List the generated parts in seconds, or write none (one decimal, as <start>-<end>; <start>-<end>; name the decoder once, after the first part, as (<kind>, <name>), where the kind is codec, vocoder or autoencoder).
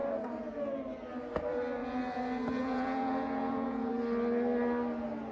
0.0-0.6 (vocoder, Vocos); 1.8-3.9